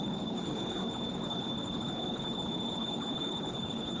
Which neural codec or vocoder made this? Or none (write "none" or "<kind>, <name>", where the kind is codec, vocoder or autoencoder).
codec, HILCodec